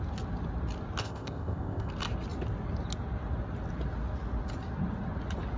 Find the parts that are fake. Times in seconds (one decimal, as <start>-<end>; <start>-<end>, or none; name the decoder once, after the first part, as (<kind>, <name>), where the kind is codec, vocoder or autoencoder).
1.0-1.9 (codec, ZipCodec)